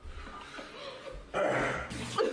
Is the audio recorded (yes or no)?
yes